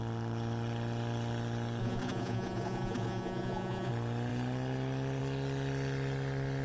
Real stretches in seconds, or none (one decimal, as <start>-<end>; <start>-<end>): 0.0-1.8; 3.9-6.6

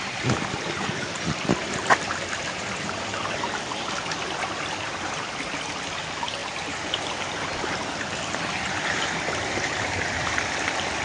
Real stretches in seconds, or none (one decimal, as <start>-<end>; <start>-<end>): 0.0-11.0

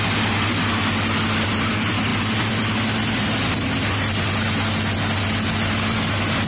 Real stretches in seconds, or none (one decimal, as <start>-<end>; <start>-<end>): 0.0-6.5

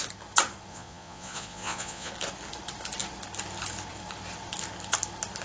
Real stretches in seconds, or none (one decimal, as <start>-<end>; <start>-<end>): 0.0-0.7; 2.1-5.4

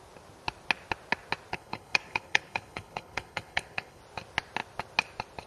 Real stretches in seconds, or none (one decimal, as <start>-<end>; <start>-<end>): 0.0-1.5; 4.0-5.5

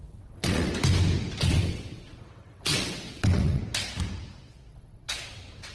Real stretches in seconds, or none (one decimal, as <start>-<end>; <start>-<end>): 0.7-1.5; 3.6-4.7

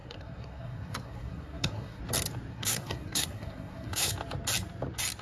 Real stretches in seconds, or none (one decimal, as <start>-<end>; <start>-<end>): 2.0-2.5; 4.1-5.2

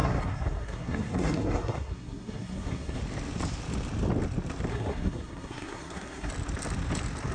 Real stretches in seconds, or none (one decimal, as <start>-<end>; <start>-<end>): 3.0-4.7; 6.3-7.3